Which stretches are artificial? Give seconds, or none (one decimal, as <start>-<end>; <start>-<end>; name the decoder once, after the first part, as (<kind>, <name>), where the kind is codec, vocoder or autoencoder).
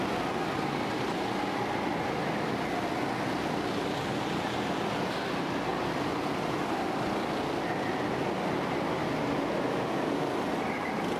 none